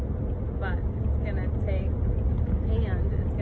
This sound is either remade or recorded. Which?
recorded